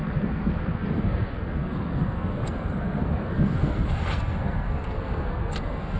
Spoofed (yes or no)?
yes